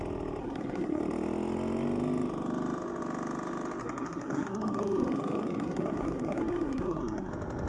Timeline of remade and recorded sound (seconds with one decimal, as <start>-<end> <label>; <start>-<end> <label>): 0.0-0.4 recorded; 0.4-1.0 remade; 1.0-3.8 recorded; 3.8-7.3 remade; 7.3-7.7 recorded